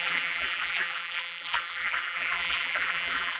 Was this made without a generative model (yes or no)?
no